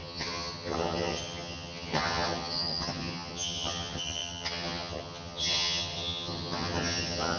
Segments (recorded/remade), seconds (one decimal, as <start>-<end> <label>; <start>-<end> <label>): 0.0-7.4 remade